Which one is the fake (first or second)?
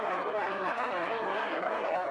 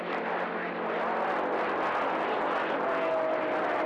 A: first